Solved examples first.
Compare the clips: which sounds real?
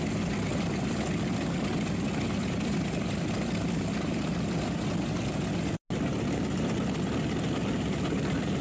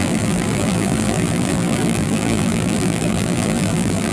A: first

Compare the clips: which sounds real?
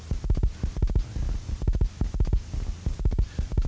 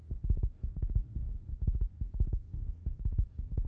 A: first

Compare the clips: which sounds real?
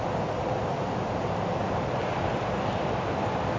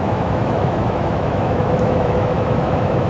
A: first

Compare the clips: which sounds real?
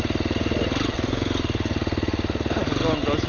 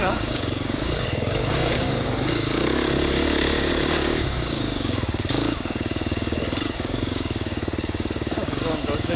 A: first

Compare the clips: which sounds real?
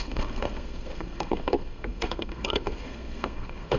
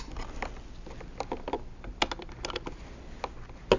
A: second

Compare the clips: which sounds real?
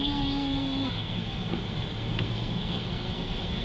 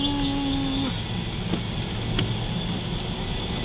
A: second